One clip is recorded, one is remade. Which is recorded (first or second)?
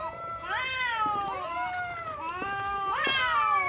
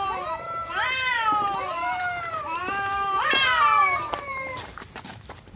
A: first